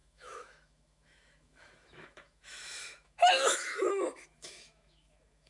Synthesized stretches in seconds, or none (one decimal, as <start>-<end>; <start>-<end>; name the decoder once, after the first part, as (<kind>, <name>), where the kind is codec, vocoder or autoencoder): 0.0-5.5 (autoencoder, DAC-VAE)